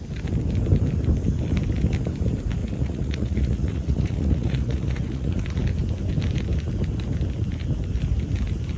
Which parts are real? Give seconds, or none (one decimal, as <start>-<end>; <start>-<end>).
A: 0.0-2.6; 5.6-8.8